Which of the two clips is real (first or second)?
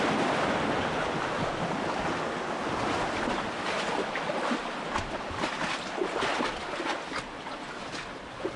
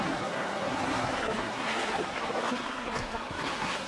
first